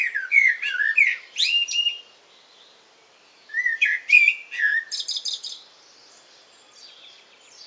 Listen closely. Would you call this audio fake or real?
real